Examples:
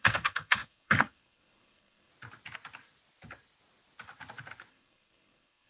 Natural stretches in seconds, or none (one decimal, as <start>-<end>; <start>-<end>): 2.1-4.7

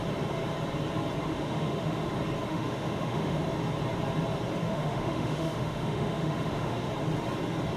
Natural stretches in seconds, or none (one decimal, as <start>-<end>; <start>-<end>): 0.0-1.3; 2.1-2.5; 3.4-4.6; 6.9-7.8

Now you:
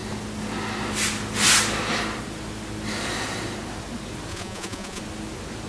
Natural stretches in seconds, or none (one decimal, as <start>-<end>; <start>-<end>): 0.0-4.3; 5.0-5.7